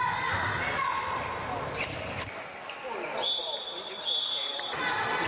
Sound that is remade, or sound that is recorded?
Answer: recorded